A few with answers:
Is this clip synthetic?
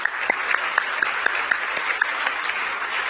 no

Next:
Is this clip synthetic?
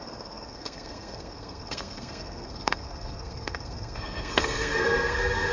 yes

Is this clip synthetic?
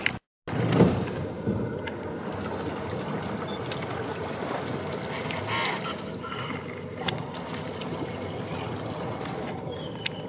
no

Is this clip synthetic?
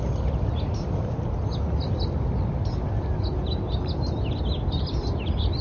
no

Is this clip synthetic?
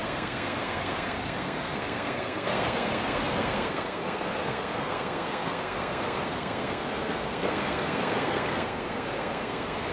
yes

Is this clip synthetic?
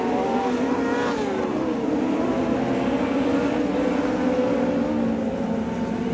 no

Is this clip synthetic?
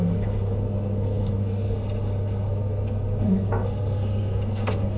yes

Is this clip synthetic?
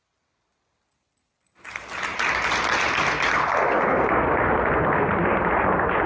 no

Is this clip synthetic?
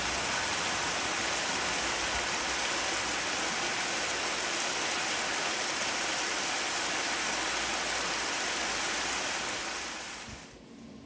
no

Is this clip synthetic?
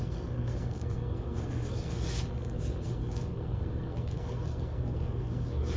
yes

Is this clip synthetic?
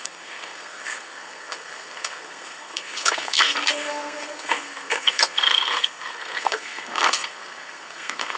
yes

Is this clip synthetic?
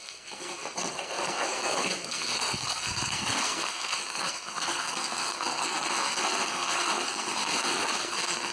yes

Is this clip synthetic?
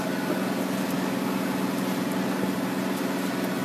no